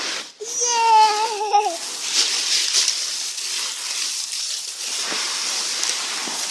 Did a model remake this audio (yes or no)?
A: no